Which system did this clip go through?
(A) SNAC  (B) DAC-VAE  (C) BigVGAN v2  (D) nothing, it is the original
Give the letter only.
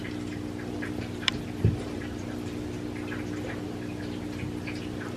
D